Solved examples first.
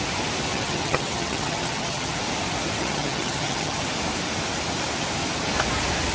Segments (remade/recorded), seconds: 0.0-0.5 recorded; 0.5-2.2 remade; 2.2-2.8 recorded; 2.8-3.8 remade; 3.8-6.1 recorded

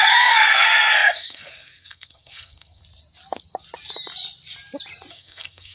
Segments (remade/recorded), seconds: 0.0-2.8 remade; 2.8-5.1 recorded; 5.1-5.7 remade

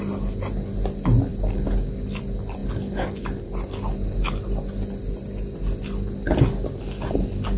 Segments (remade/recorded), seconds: 0.0-7.6 recorded

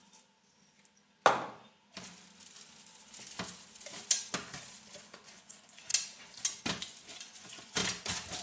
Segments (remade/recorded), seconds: 0.0-5.0 recorded; 5.0-5.9 remade; 5.9-6.8 recorded; 6.8-7.8 remade; 7.8-8.4 recorded